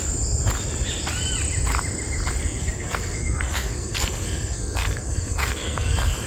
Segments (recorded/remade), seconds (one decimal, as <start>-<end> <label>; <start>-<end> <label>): 0.0-2.4 recorded; 2.4-6.3 remade